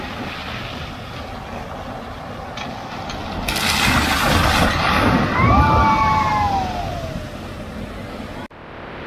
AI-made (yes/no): no